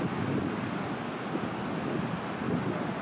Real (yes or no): yes